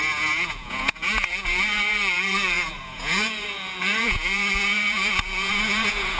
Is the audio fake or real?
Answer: fake